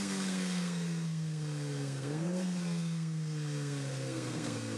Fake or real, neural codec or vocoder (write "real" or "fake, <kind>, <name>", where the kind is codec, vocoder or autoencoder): fake, codec, SNAC